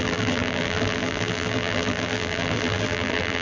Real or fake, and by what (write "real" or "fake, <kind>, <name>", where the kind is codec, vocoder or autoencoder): fake, vocoder, BigVGAN v2